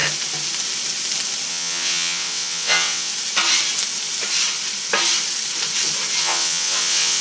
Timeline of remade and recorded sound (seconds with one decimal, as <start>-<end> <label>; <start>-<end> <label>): 0.0-1.5 recorded; 1.5-3.1 remade; 3.1-6.2 recorded; 6.2-7.2 remade